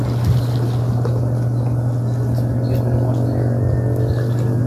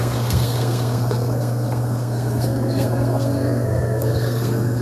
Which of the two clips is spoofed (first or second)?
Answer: second